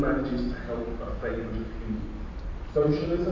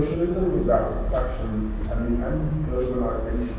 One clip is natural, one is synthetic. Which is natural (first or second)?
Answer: first